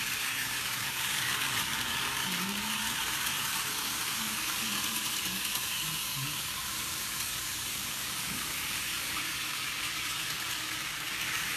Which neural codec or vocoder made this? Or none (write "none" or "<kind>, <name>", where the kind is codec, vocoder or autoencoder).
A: codec, DAC